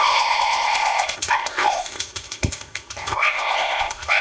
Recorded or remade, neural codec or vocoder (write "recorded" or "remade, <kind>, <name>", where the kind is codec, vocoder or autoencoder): remade, codec, ZipCodec